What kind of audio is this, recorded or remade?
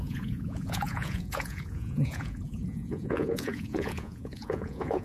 remade